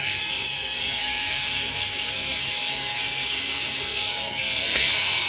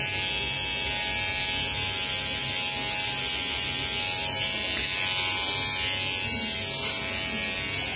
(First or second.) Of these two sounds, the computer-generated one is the first